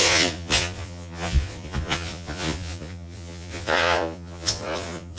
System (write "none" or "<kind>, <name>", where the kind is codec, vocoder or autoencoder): vocoder, Vocos